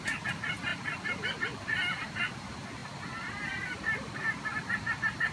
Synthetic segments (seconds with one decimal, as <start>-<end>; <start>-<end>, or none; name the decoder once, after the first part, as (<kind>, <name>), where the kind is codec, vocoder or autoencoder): none